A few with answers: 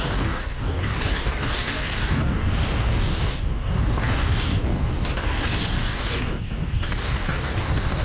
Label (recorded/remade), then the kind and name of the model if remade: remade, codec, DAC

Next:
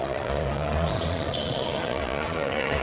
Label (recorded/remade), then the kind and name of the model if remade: remade, vocoder, Vocos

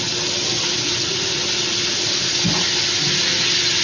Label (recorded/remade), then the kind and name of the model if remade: recorded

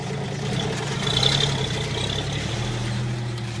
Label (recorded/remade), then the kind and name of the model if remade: recorded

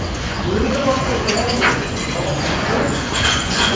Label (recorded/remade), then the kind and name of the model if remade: remade, vocoder, Vocos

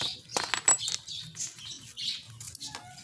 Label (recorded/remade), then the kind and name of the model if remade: recorded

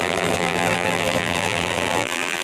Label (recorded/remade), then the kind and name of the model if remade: remade, vocoder, BigVGAN v2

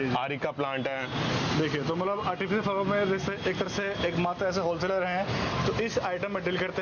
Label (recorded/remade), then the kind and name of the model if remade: recorded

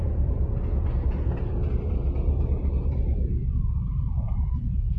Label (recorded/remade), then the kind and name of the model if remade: remade, vocoder, BigVGAN v2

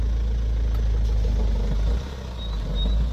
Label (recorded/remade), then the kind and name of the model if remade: recorded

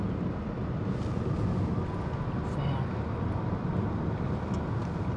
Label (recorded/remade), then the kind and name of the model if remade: recorded